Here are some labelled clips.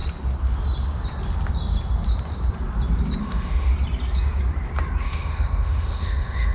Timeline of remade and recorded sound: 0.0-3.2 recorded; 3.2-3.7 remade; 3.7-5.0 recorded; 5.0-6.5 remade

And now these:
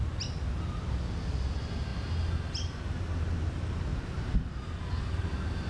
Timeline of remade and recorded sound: 0.0-5.7 recorded

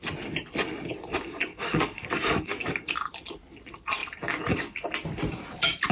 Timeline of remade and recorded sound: 0.0-1.5 recorded; 1.5-2.9 remade; 2.9-5.9 recorded

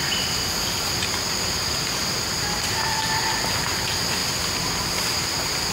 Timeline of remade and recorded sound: 0.0-5.7 recorded

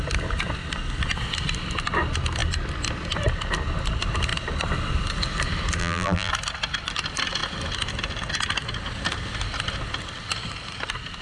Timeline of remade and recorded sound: 0.0-5.8 recorded; 5.8-6.3 remade; 6.3-11.2 recorded

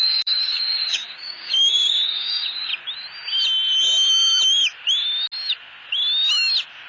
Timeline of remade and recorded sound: 0.0-2.7 remade; 2.7-6.9 recorded

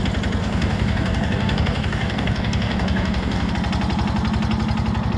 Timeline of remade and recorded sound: 0.0-0.4 recorded; 0.4-3.5 remade; 3.5-5.2 recorded

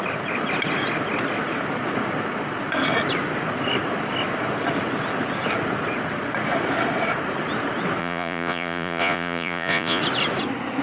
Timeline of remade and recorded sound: 0.0-8.0 recorded; 8.0-10.0 remade; 10.0-10.8 recorded